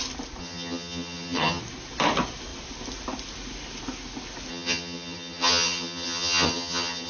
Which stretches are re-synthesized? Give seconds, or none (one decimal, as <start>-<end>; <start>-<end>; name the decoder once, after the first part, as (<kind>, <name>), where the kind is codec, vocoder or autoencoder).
0.4-1.6 (vocoder, HiFi-GAN); 4.5-7.1